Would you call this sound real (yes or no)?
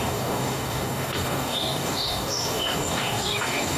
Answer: no